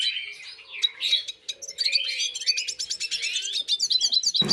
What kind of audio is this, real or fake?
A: real